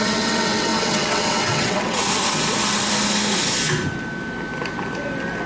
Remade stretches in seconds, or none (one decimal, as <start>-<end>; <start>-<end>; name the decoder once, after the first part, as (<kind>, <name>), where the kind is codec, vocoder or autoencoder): 0.0-2.0 (vocoder, WaveNeXt)